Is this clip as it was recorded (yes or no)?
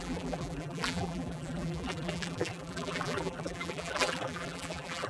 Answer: no